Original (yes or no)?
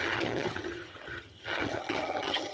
no